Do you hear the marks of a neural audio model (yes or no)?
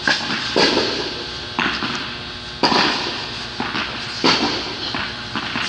no